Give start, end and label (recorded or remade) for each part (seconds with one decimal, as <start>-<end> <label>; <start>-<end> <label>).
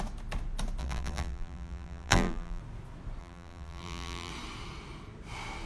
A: 0.0-0.8 recorded; 0.8-2.6 remade; 2.6-3.2 recorded; 3.2-4.3 remade; 4.3-5.7 recorded